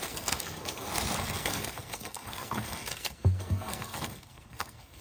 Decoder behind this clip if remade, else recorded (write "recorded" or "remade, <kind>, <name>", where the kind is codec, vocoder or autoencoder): remade, codec, SNAC